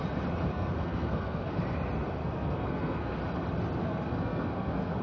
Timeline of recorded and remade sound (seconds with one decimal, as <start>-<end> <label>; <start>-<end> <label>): 0.0-0.5 recorded; 0.5-1.6 remade; 1.6-2.2 recorded; 2.2-3.2 remade; 3.2-3.8 recorded; 3.8-5.0 remade